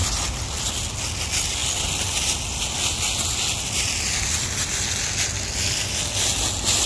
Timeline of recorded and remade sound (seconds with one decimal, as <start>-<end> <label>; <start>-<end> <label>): 0.0-6.9 recorded